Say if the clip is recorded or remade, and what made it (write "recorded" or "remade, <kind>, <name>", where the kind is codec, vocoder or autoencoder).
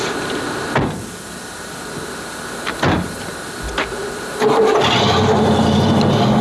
recorded